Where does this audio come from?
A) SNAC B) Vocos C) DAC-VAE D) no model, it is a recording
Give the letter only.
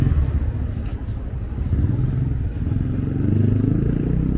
D